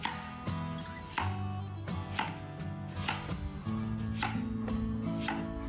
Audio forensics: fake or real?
real